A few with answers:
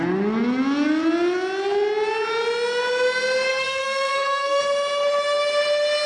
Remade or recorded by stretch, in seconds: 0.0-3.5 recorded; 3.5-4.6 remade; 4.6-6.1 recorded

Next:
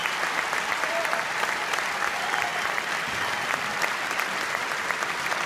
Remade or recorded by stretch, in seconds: 0.0-0.9 recorded; 0.9-5.5 remade